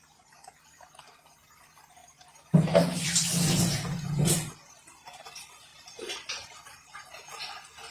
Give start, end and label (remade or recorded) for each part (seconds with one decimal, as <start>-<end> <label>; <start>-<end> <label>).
0.0-5.7 recorded; 5.7-7.4 remade; 7.4-7.9 recorded